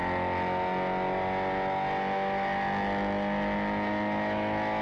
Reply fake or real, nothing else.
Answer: real